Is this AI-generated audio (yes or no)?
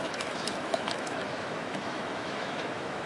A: yes